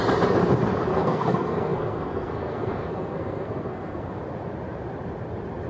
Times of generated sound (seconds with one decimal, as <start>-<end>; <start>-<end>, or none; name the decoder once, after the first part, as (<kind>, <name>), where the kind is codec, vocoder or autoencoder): 0.9-4.2 (codec, SNAC)